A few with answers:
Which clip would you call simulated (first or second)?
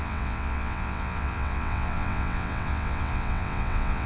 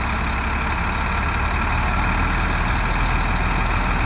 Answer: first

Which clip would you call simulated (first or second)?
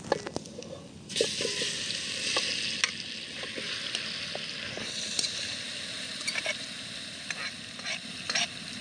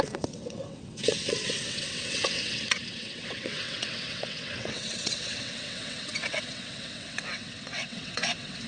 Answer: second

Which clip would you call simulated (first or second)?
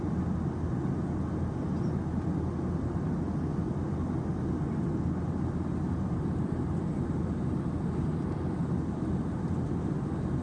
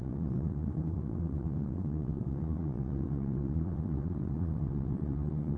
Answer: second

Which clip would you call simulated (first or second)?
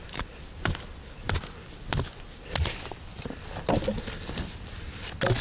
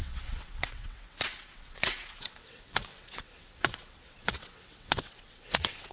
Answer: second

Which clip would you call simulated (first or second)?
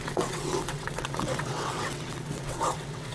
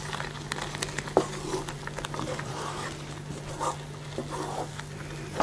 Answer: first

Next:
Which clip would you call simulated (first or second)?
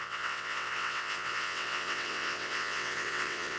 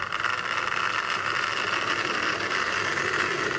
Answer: first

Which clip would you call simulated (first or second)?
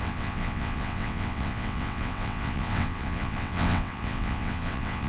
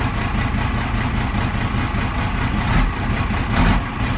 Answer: first